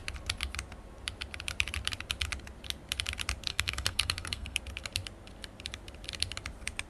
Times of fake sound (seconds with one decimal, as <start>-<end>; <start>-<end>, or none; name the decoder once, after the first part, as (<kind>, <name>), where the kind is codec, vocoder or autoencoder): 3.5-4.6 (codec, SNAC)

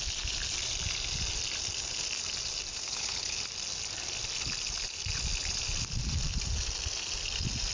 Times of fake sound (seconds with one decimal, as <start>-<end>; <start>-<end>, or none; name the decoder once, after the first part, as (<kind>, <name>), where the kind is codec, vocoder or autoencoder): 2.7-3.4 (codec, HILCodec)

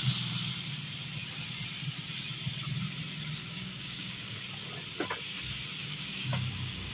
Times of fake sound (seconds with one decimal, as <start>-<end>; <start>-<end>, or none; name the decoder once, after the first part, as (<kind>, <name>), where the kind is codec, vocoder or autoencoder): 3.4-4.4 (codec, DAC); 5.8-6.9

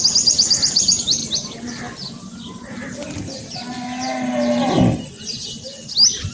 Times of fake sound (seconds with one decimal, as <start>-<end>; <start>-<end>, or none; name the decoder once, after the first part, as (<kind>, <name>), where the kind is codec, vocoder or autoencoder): none

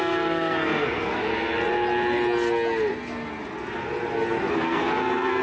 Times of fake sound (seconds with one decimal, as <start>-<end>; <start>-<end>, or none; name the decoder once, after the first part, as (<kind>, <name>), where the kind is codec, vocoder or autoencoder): 0.0-1.3 (codec, SNAC); 4.5-5.4

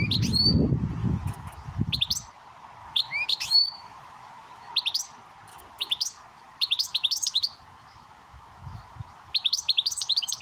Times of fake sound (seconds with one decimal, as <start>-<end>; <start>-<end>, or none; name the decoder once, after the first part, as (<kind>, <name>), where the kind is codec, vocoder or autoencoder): 1.0-2.0 (autoencoder, DAC-VAE); 2.8-4.7; 5.5-10.4

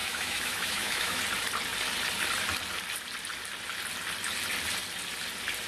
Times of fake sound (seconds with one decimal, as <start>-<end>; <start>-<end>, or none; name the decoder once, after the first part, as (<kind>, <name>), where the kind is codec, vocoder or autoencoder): 0.0-1.2 (autoencoder, DAC-VAE)

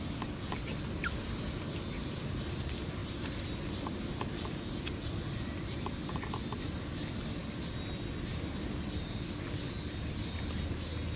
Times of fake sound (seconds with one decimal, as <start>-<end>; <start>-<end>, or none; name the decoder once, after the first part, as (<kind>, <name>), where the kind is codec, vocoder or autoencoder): 3.0-6.1 (vocoder, BigVGAN v2)